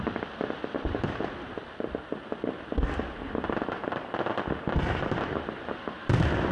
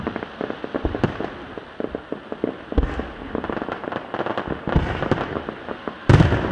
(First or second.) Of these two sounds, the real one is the second